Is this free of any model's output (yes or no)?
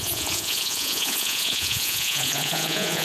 no